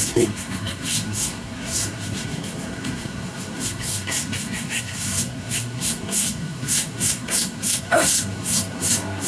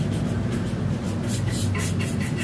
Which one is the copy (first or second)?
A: first